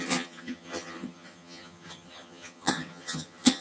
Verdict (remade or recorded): remade